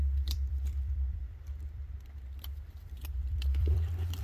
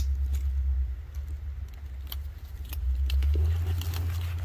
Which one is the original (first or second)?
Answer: second